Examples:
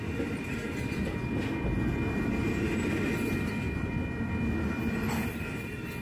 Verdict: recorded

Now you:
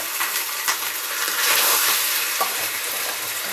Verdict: remade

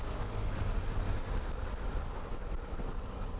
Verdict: remade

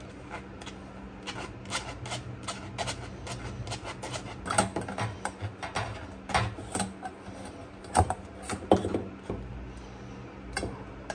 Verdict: recorded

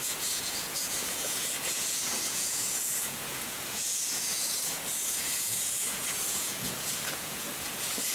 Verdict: remade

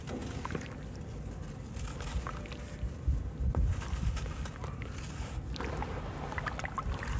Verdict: recorded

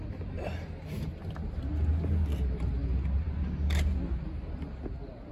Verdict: recorded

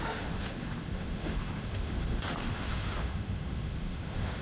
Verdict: remade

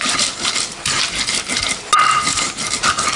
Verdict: recorded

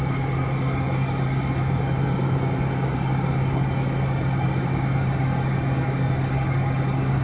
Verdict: remade